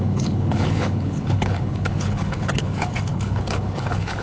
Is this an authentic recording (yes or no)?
no